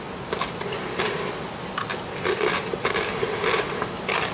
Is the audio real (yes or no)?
yes